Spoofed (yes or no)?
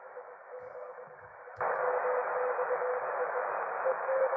yes